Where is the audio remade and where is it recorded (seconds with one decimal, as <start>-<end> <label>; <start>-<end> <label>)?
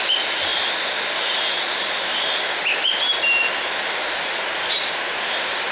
0.0-5.7 recorded